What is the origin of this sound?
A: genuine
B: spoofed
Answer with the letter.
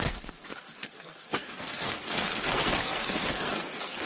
B